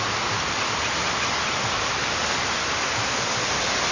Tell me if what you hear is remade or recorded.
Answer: recorded